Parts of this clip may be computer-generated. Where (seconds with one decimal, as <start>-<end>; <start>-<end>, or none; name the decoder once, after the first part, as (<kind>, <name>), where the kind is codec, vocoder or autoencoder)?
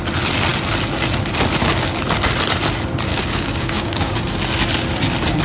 3.1-4.2 (codec, DAC)